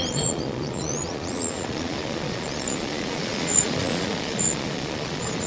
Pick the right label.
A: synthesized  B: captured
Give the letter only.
A